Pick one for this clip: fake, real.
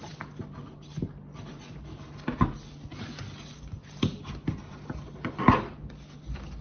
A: real